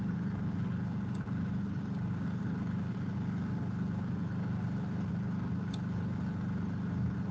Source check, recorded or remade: recorded